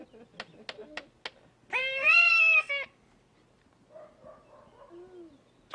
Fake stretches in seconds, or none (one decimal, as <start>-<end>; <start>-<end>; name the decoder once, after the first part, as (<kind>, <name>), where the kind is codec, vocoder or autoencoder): 1.8-2.7 (codec, SNAC)